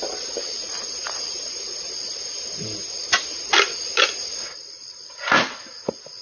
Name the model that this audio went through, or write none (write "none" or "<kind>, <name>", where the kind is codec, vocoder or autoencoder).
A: none